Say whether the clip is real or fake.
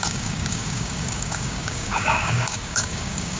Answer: fake